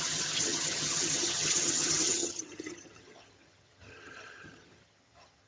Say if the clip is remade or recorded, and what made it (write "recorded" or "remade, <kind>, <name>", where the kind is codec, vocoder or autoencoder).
remade, vocoder, HiFi-GAN